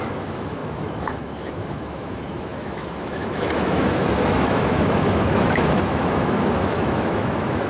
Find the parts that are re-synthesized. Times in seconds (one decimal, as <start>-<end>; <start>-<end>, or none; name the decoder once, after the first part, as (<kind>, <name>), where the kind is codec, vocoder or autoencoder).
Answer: 0.0-7.7 (autoencoder, DAC-VAE)

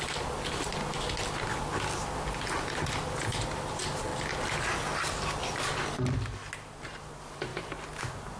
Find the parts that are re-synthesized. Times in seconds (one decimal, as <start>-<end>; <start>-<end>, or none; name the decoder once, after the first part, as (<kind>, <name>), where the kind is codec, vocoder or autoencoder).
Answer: none

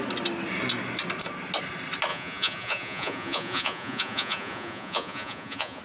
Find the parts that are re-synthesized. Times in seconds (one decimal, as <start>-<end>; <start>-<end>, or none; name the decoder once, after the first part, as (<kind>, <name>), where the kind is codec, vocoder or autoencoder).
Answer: 2.1-5.8 (vocoder, Vocos)

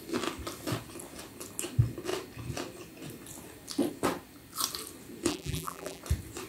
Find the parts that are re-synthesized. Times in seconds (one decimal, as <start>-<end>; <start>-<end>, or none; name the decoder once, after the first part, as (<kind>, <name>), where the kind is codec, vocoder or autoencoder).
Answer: 5.3-6.0 (vocoder, BigVGAN v2)

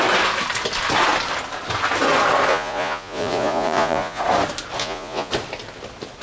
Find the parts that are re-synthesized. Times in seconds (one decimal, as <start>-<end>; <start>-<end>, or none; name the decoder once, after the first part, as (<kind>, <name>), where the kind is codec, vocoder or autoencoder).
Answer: 2.5-4.2 (vocoder, Vocos); 4.8-5.3